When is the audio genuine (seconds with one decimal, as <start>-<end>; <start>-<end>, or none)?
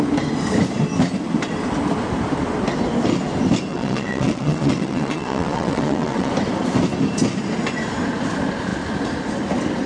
0.0-3.7; 6.3-9.9